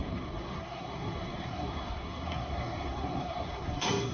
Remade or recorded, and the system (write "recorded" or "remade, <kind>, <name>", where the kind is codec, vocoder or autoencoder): remade, codec, SNAC